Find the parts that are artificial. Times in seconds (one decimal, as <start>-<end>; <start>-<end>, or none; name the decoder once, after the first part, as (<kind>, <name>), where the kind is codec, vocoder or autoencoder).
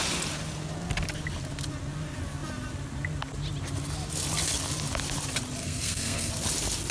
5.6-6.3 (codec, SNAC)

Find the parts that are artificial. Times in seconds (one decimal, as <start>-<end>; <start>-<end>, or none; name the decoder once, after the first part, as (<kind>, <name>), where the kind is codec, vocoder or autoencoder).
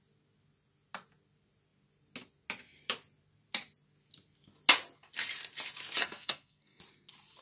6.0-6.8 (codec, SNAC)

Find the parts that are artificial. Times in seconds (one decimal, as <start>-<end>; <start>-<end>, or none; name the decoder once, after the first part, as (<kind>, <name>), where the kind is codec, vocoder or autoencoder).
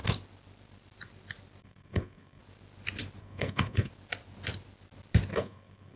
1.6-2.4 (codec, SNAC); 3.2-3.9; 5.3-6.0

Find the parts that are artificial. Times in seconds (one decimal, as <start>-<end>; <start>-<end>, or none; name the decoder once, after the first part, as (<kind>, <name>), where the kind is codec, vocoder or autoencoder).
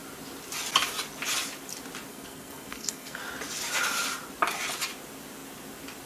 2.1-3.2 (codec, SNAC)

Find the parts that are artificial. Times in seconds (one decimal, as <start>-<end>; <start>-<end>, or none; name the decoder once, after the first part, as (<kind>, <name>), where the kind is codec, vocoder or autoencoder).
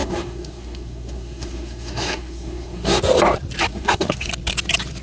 0.0-3.0 (codec, SNAC); 3.7-4.3